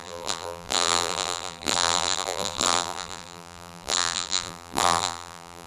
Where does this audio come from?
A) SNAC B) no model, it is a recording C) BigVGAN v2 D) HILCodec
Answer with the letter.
C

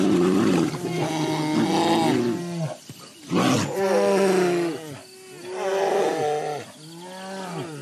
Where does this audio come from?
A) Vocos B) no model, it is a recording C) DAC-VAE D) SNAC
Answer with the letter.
B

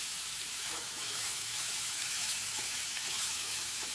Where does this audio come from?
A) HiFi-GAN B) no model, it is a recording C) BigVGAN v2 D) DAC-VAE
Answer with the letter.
D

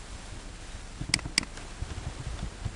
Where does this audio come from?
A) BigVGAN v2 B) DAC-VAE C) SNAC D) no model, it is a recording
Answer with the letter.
D